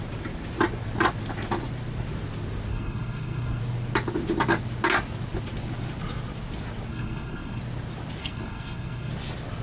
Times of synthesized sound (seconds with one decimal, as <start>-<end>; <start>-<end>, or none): 2.7-3.6; 6.9-7.6; 8.2-9.1